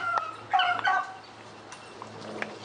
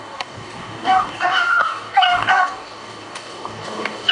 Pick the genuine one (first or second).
first